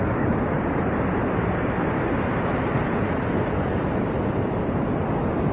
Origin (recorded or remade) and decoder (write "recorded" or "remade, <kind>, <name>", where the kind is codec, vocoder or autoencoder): recorded